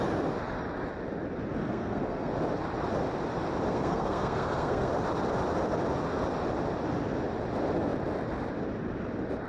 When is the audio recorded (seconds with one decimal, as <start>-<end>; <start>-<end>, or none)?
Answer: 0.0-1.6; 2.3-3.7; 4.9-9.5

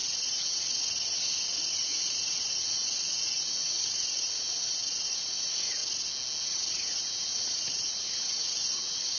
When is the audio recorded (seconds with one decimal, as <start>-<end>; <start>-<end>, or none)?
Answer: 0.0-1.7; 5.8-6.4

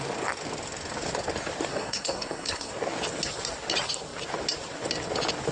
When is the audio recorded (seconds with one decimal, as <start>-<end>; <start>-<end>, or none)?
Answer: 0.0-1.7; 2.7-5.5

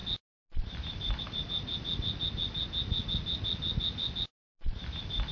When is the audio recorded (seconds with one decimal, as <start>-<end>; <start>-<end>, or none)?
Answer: 0.0-5.3

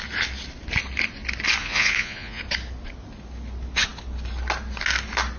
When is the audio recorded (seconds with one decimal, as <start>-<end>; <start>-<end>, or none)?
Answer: 0.0-1.6; 2.4-5.4

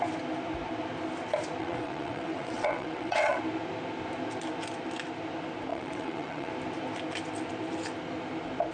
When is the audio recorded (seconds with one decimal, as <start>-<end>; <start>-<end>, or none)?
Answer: 0.0-1.6; 3.4-5.7; 6.5-8.7